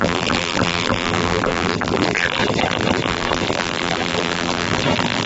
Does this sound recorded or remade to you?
remade